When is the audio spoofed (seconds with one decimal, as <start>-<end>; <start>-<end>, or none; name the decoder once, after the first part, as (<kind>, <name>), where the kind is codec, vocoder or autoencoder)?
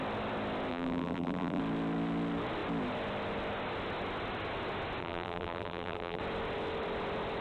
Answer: 0.7-1.6 (vocoder, BigVGAN v2); 5.0-6.2